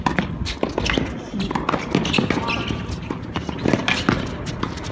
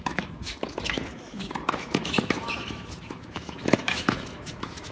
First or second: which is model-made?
second